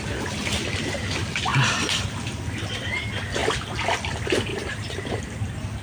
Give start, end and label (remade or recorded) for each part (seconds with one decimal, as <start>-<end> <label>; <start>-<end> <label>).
0.0-1.5 recorded; 1.5-2.4 remade; 2.4-4.5 recorded; 4.5-5.2 remade; 5.2-5.8 recorded